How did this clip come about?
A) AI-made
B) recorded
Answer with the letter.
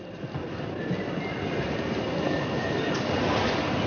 B